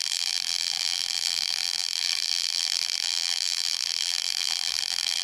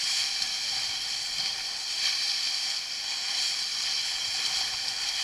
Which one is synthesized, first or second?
first